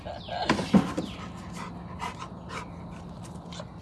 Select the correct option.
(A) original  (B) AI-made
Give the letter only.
A